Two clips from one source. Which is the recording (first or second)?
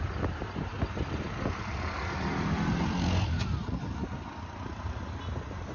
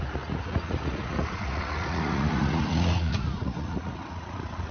first